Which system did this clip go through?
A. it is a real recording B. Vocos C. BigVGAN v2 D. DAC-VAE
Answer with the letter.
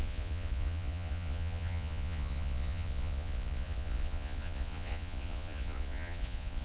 B